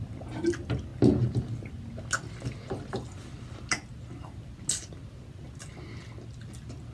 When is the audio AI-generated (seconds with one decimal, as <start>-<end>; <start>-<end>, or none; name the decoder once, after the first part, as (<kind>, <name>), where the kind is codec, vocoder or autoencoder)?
none